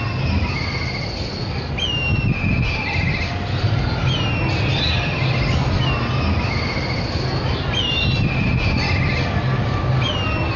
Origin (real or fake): real